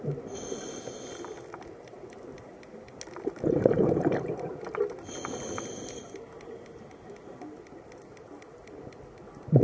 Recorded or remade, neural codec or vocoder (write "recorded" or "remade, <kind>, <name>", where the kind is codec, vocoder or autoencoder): recorded